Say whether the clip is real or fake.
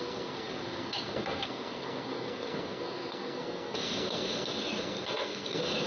fake